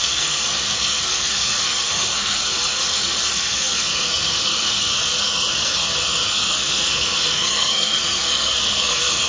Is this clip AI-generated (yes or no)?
yes